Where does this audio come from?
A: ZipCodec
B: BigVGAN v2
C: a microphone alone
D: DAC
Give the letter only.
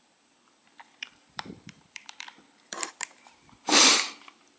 B